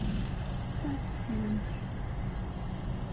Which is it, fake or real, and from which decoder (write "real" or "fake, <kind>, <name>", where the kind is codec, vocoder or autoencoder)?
real